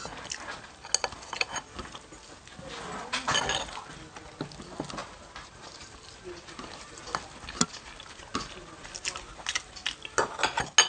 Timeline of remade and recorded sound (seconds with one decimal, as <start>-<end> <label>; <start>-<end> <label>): 0.0-5.0 recorded; 5.0-7.0 remade; 7.0-10.9 recorded

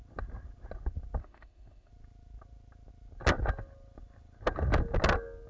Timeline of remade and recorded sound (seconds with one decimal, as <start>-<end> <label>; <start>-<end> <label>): 0.0-1.2 recorded; 1.2-1.9 remade; 1.9-5.5 recorded

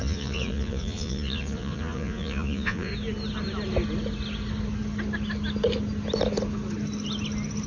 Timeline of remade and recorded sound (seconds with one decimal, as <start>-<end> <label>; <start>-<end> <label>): 0.0-2.9 remade; 2.9-7.7 recorded

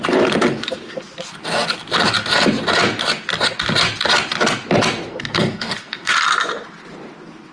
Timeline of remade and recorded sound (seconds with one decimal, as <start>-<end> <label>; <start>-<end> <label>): 0.0-5.1 recorded; 5.1-6.1 remade; 6.1-7.5 recorded

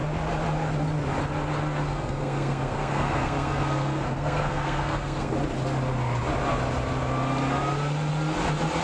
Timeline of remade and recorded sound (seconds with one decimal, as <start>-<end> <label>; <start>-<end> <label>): 0.0-1.9 recorded; 1.9-5.3 remade; 5.3-8.8 recorded